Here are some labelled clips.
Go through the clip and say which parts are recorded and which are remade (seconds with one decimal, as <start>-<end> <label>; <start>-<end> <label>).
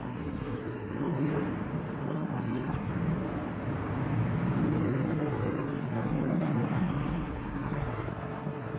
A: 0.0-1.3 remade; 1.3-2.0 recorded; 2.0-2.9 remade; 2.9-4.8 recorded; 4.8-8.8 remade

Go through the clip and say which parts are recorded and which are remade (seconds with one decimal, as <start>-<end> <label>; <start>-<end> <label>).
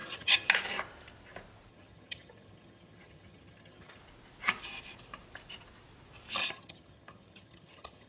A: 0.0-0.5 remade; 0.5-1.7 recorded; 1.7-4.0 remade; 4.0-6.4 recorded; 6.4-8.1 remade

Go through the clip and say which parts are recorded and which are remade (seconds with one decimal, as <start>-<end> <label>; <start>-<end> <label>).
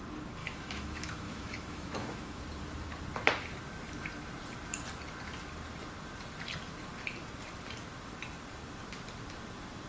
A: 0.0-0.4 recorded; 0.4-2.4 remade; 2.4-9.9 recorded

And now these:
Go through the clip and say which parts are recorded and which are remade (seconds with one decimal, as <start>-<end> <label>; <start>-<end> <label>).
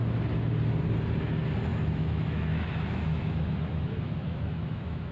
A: 0.0-1.7 recorded; 1.7-5.1 remade